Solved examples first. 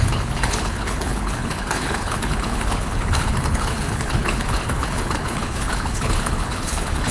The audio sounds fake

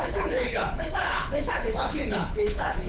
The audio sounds fake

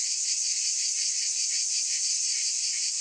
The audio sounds real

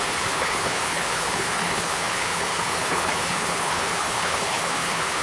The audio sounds fake